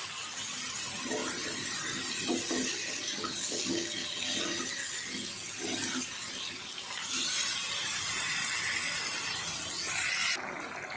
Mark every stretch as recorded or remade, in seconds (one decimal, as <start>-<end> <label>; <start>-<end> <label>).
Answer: 0.0-11.0 recorded